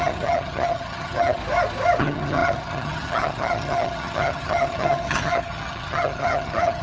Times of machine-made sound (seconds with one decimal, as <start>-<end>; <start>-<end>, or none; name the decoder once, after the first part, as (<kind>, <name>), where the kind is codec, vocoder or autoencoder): 0.0-1.4 (vocoder, HiFi-GAN); 2.0-6.8